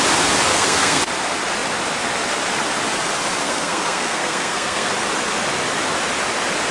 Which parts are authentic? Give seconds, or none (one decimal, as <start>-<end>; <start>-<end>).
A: 0.0-0.5; 1.0-3.4; 4.9-6.7